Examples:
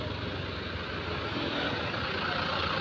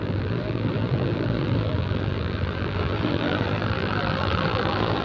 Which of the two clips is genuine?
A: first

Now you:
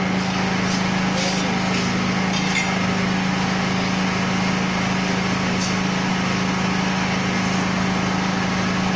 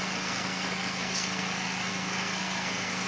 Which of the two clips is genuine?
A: first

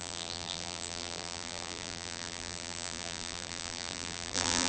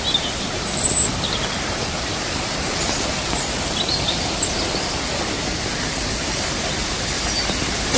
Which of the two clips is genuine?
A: second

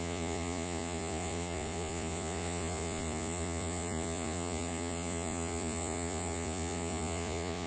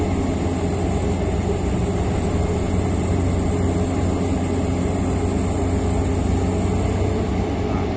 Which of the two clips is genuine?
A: second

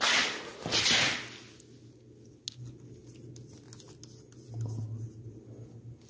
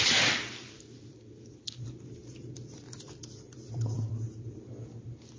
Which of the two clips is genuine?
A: first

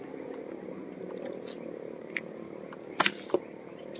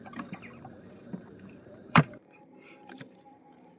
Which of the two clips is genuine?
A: first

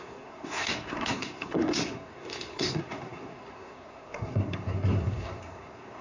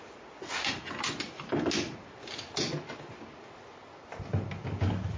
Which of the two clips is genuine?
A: second